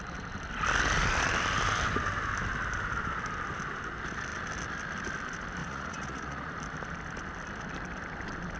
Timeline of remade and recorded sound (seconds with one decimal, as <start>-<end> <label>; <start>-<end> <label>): 0.0-5.6 recorded; 5.6-6.5 remade; 6.5-8.6 recorded